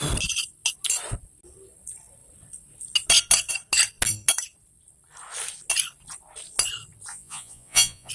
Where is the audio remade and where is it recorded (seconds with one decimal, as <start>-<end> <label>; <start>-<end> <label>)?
0.0-7.1 recorded; 7.1-8.1 remade